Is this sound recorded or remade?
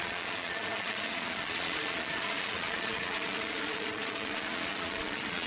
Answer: remade